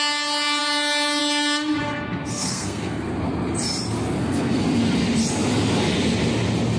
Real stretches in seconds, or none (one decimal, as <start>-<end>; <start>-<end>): 0.0-2.3; 3.1-4.2; 4.7-6.8